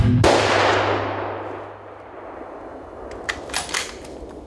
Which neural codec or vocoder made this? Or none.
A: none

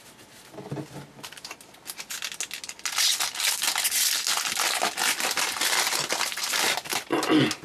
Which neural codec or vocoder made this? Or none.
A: none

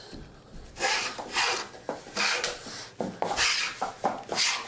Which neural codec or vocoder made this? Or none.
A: none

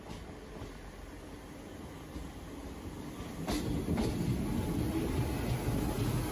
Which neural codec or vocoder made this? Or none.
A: none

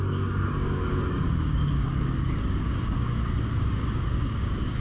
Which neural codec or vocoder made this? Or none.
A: codec, DAC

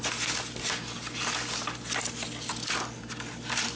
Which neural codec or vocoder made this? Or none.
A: none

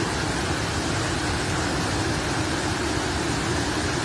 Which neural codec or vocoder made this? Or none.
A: none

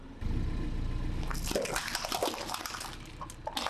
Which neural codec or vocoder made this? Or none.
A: none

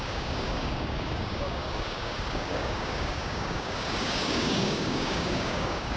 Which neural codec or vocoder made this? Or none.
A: codec, DAC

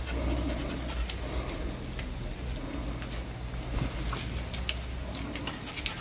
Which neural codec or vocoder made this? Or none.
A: none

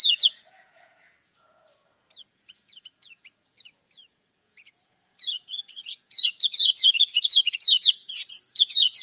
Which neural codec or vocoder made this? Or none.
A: vocoder, Vocos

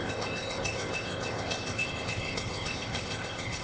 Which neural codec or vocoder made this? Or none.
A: codec, ZipCodec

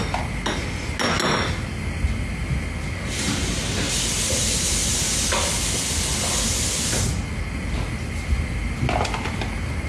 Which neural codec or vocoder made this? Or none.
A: none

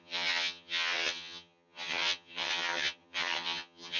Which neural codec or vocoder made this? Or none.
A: vocoder, HiFi-GAN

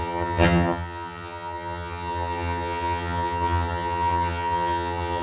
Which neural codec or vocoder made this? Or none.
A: vocoder, HiFi-GAN